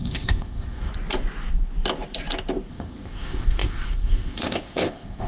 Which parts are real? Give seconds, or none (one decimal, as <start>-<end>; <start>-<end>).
0.9-2.7